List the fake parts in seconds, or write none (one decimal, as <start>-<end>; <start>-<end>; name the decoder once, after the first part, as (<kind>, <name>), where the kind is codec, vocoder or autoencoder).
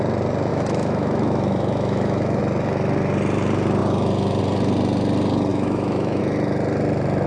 0.5-2.4 (autoencoder, DAC-VAE); 5.5-6.2